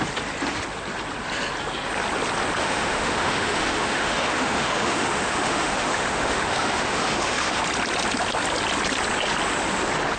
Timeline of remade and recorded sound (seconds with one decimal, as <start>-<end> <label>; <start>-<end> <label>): 0.0-2.6 recorded; 2.6-7.6 remade; 7.6-10.2 recorded